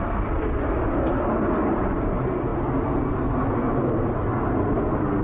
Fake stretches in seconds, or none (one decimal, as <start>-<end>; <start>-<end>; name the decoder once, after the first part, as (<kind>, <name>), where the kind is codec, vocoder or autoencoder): none